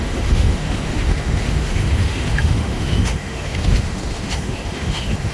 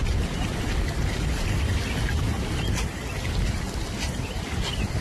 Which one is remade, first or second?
first